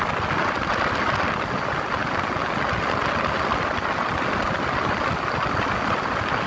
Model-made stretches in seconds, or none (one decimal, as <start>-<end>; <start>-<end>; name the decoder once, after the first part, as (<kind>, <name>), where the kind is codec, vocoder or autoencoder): none